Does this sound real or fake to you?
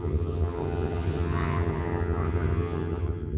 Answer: fake